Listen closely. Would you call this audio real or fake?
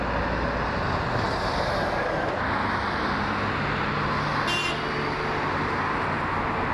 real